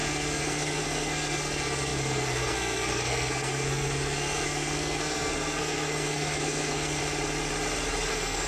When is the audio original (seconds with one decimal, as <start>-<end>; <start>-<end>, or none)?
7.0-8.1